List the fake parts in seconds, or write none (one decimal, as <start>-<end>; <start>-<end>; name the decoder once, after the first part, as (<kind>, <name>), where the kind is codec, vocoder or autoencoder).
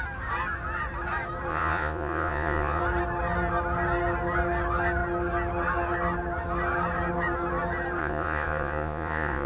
1.5-2.8 (vocoder, Vocos); 8.0-9.5